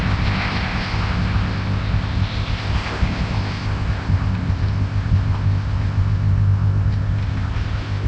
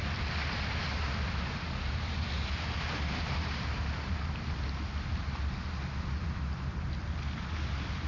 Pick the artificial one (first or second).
first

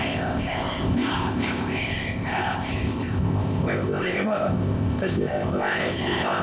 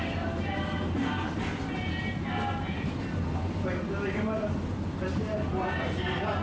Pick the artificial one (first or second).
first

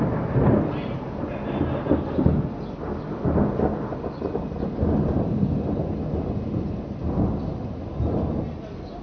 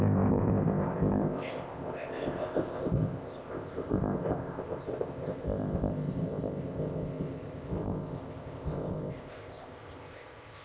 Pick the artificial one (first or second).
second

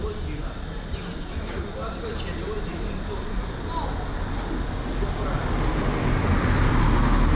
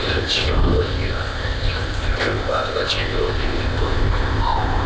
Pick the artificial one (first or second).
second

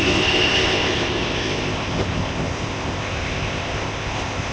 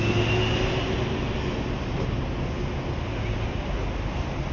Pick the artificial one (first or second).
first